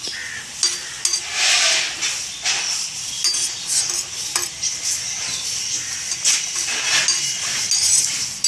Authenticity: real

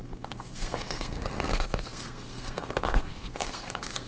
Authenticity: fake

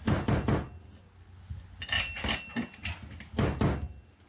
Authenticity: real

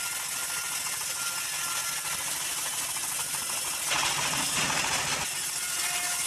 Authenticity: real